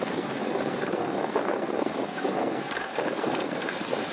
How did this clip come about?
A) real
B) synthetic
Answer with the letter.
B